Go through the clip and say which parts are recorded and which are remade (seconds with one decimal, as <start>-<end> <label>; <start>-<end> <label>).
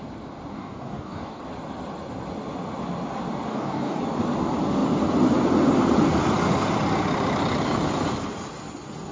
0.0-0.5 recorded; 0.5-1.4 remade; 1.4-3.5 recorded; 3.5-4.0 remade; 4.0-9.1 recorded